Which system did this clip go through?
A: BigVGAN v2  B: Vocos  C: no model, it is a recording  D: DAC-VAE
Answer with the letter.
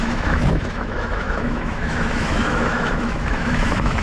D